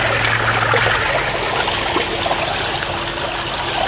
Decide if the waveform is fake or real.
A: real